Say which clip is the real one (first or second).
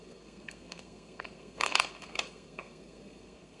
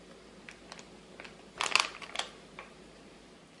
second